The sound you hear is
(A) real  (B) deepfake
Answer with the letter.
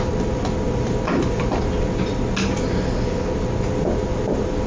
A